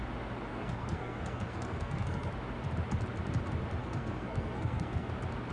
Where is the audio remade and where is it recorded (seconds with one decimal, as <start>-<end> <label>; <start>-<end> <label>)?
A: 0.0-0.5 recorded; 0.5-2.3 remade; 2.3-3.8 recorded; 3.8-5.1 remade; 5.1-5.5 recorded